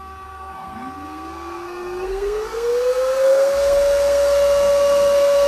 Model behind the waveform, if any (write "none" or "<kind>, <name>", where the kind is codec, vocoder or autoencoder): codec, SNAC